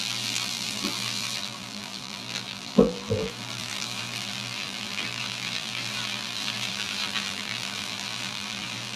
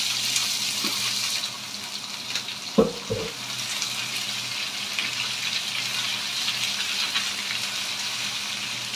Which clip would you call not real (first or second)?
first